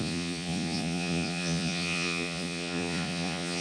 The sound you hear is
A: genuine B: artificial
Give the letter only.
B